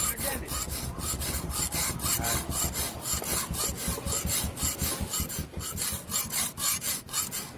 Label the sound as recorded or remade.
recorded